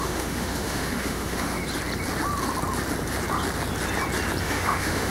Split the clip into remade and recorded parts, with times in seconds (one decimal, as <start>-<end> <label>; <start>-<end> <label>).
0.0-1.6 remade; 1.6-4.4 recorded; 4.4-5.1 remade